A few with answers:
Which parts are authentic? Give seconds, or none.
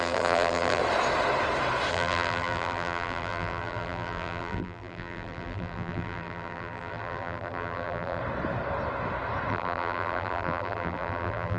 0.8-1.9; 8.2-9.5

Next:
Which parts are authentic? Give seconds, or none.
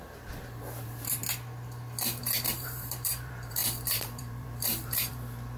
1.2-2.2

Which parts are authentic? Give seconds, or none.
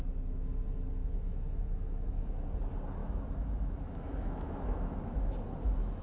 0.0-1.0; 2.3-3.0; 5.3-6.0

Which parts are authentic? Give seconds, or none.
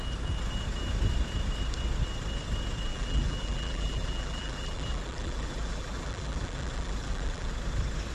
0.0-2.9; 7.5-8.1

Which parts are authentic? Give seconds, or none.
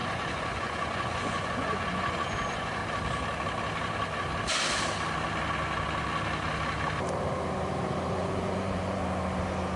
2.8-8.1; 9.0-9.8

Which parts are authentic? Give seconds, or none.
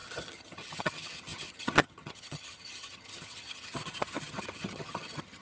none